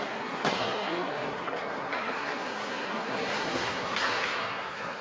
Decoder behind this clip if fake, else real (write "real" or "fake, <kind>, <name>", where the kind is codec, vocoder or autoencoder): fake, codec, SNAC